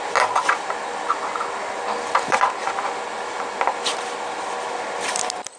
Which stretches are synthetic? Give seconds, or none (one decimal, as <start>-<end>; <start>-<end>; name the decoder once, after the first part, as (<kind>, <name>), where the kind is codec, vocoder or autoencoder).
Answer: none